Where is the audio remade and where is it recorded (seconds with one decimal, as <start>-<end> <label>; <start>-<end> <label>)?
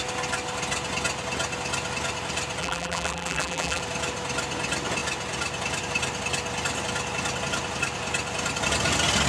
0.0-2.6 recorded; 2.6-3.8 remade; 3.8-9.3 recorded